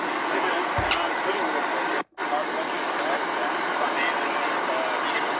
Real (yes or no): yes